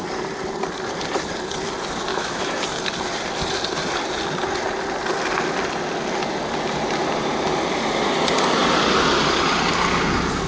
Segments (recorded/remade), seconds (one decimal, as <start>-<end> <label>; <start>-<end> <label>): 0.0-2.1 recorded; 2.1-2.6 remade; 2.6-10.5 recorded